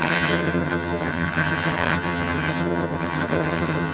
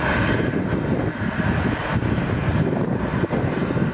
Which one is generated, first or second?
first